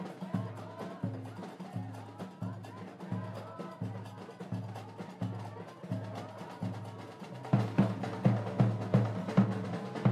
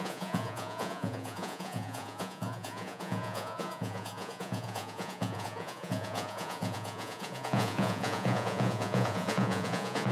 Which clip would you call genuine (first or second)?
first